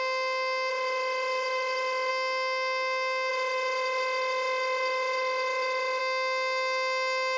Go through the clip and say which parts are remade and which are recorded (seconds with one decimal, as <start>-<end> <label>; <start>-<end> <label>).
0.0-0.7 recorded; 0.7-2.1 remade; 2.1-3.3 recorded; 3.3-6.0 remade; 6.0-7.4 recorded